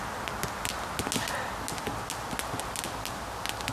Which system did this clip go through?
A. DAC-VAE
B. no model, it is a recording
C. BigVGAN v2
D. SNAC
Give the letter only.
B